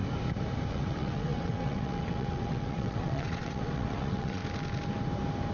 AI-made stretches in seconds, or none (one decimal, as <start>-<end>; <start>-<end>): 0.7-4.4